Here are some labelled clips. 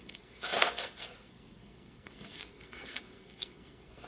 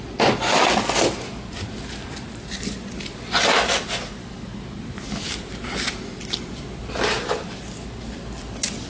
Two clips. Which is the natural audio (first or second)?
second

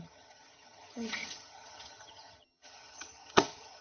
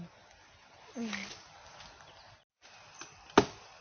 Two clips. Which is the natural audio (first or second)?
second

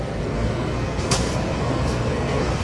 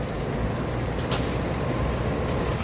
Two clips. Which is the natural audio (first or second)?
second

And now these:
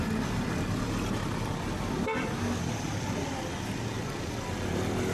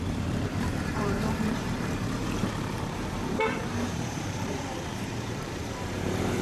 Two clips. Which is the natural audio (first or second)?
first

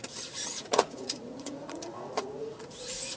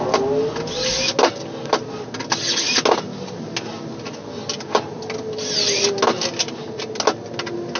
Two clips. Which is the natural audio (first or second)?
second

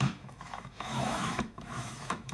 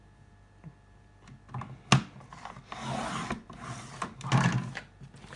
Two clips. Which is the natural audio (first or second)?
second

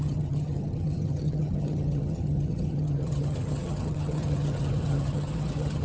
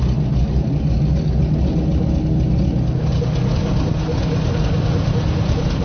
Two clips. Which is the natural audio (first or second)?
second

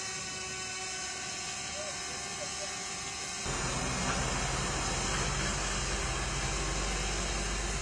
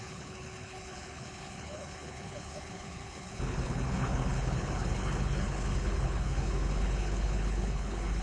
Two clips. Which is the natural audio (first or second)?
first